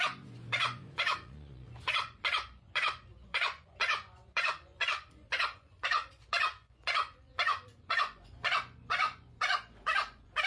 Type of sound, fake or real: fake